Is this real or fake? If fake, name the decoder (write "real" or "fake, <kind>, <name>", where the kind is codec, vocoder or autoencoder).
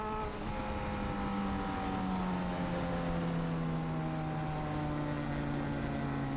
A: real